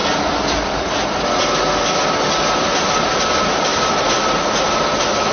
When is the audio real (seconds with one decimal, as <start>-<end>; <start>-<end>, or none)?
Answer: 0.0-5.3